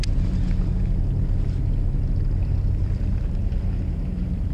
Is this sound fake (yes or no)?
no